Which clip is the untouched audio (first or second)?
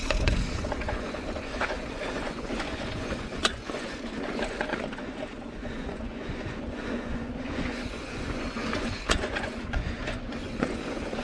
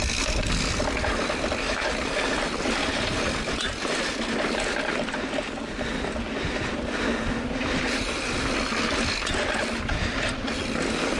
second